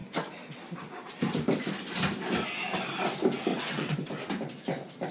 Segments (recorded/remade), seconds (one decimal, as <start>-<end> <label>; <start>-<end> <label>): 0.0-3.5 recorded; 3.5-4.1 remade; 4.1-5.1 recorded